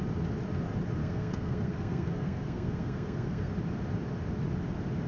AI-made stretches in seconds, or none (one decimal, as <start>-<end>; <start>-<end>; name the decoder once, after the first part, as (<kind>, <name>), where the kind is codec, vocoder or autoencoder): 1.0-3.5 (codec, SNAC)